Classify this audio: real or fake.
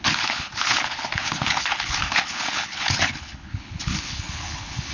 fake